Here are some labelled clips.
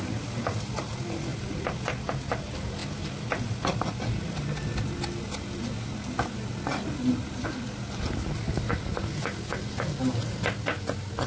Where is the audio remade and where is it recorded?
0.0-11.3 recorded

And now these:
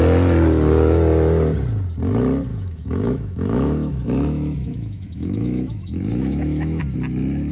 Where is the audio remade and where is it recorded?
0.0-2.5 recorded; 2.5-6.8 remade; 6.8-7.5 recorded

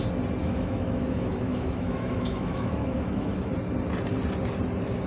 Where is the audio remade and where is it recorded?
0.0-0.4 recorded; 0.4-3.5 remade; 3.5-5.1 recorded

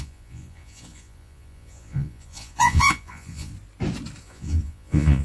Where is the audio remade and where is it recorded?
0.0-3.5 remade; 3.5-4.2 recorded; 4.2-5.2 remade

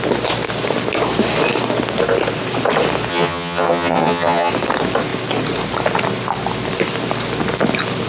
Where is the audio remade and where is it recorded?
0.0-3.1 recorded; 3.1-4.5 remade; 4.5-8.1 recorded

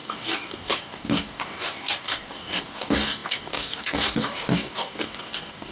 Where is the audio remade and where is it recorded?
0.0-5.7 remade